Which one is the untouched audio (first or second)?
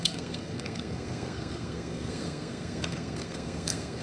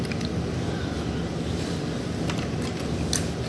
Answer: second